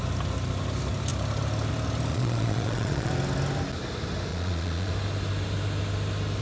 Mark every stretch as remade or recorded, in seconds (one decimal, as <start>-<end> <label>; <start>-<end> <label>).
0.0-2.1 recorded; 2.1-3.1 remade; 3.1-4.3 recorded; 4.3-4.9 remade; 4.9-6.4 recorded